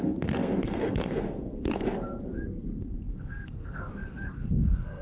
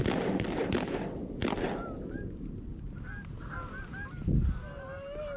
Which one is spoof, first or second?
first